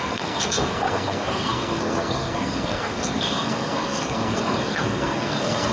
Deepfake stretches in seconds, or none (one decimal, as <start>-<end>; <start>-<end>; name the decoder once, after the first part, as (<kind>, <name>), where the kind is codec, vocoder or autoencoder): 0.0-5.7 (codec, SNAC)